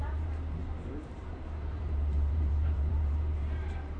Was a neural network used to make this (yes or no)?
yes